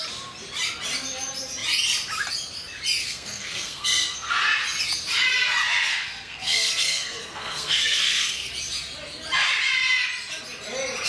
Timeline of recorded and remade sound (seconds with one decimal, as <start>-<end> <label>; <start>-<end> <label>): 0.0-3.0 recorded; 3.0-4.3 remade; 4.3-5.9 recorded; 5.9-8.5 remade; 8.5-11.1 recorded